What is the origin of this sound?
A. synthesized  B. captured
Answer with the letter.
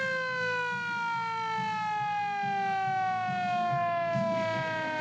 B